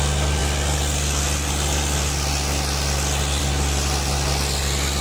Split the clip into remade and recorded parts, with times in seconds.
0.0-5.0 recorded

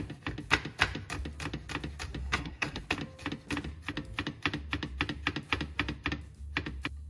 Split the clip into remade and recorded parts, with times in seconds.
0.0-2.2 recorded; 2.2-2.8 remade; 2.8-7.1 recorded

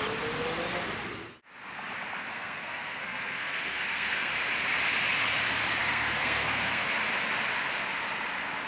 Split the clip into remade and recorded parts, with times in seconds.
0.0-2.3 recorded; 2.3-4.3 remade; 4.3-5.8 recorded; 5.8-6.9 remade; 6.9-8.7 recorded

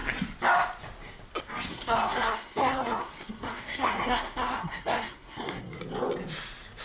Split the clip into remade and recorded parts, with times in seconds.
0.0-1.7 recorded; 1.7-5.8 remade; 5.8-6.8 recorded

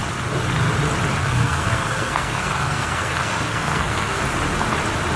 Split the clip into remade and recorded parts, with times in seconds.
0.0-1.2 recorded; 1.2-4.2 remade; 4.2-5.2 recorded

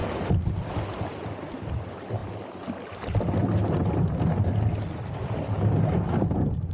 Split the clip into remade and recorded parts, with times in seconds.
0.0-6.7 recorded

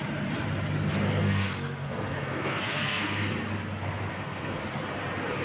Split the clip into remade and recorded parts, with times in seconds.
0.0-1.2 recorded; 1.2-3.3 remade; 3.3-4.1 recorded; 4.1-4.6 remade; 4.6-5.4 recorded

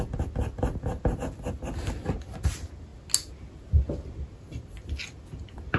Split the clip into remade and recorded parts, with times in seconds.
0.0-5.8 recorded